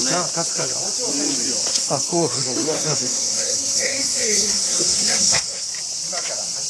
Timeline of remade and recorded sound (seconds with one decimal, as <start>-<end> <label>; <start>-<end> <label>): 0.0-1.7 recorded; 1.7-5.7 remade; 5.7-6.7 recorded